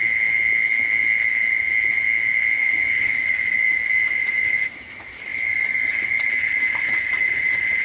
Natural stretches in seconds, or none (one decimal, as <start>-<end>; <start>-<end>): 0.0-2.6; 3.3-7.8